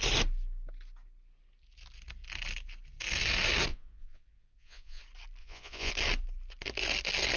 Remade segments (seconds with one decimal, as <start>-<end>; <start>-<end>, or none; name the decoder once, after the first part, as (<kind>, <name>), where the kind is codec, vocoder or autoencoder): 3.7-5.0 (vocoder, Vocos); 5.4-5.9